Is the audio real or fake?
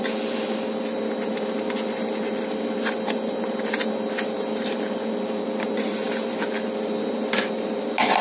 real